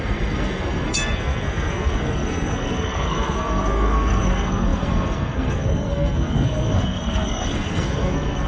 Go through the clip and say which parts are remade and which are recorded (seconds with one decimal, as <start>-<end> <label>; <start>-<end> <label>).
0.0-8.5 remade